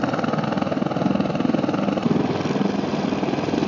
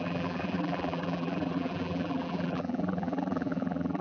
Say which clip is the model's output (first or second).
second